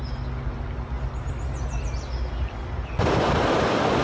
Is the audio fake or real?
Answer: real